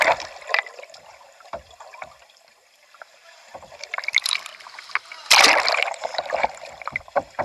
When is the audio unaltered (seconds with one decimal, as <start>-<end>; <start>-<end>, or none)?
4.5-5.7